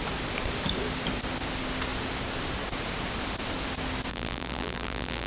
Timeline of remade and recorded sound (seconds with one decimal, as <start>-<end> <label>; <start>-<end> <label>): 0.0-4.1 recorded; 4.1-5.3 remade